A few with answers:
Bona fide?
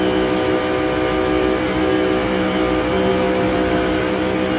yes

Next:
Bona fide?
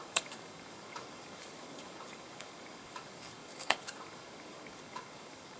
no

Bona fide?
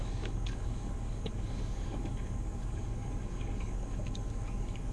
no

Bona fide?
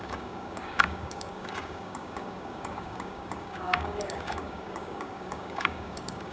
no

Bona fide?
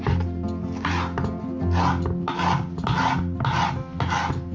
yes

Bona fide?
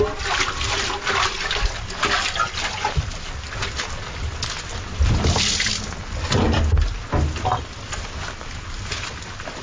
yes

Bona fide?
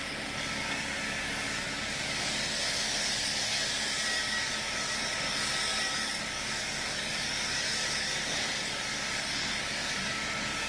no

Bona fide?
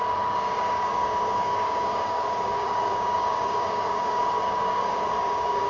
no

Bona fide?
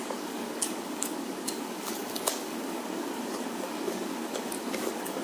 no